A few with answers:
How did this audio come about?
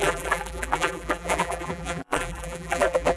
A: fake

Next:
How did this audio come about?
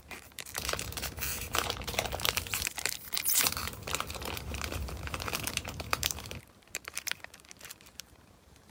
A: fake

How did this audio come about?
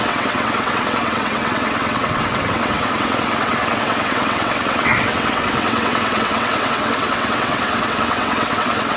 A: fake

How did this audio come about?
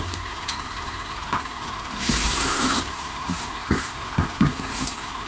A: fake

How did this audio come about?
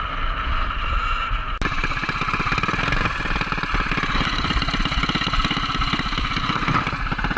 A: real